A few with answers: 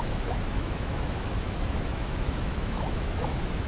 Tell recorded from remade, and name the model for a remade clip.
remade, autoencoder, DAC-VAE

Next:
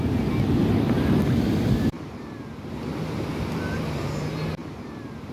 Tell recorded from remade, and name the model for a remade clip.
recorded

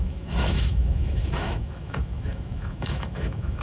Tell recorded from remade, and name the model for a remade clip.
remade, autoencoder, DAC-VAE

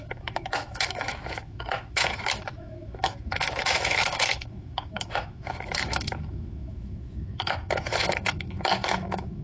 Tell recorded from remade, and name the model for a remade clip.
remade, autoencoder, DAC-VAE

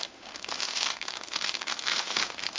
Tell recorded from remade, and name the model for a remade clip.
remade, autoencoder, DAC-VAE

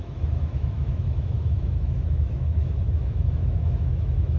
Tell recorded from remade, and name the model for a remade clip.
remade, autoencoder, DAC-VAE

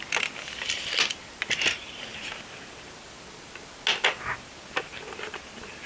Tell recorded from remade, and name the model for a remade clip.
recorded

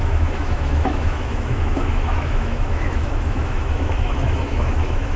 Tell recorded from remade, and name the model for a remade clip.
remade, autoencoder, DAC-VAE